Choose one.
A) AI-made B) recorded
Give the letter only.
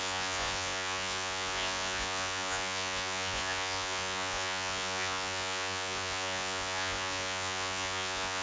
A